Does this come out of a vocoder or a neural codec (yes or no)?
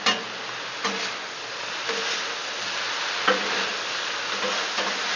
no